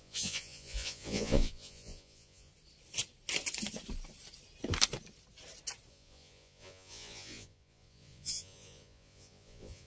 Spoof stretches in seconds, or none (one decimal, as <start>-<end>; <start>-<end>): 0.0-2.5; 5.9-9.9